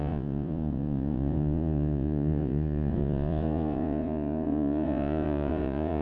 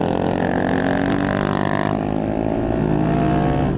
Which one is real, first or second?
second